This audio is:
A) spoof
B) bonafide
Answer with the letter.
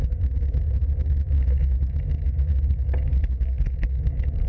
A